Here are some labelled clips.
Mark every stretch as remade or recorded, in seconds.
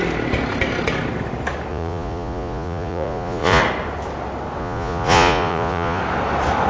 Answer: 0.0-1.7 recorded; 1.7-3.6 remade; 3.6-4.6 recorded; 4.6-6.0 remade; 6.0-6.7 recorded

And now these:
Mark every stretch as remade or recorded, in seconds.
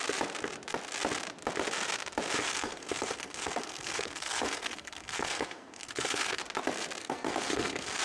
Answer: 0.0-2.4 recorded; 2.4-6.4 remade; 6.4-7.0 recorded; 7.0-8.0 remade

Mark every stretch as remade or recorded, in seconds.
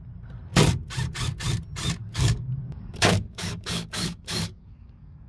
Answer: 0.0-2.0 recorded; 2.0-5.3 remade